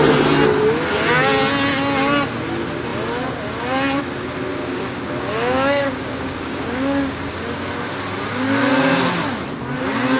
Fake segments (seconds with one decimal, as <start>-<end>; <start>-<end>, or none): 4.5-7.7